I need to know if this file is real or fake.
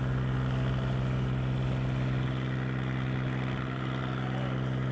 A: real